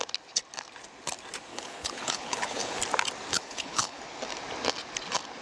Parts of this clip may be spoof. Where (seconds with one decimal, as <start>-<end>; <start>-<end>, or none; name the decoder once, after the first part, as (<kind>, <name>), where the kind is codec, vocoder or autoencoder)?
1.5-2.8 (codec, HILCodec); 3.3-4.0